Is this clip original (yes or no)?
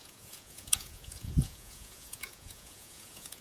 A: no